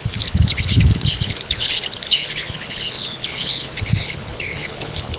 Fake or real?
fake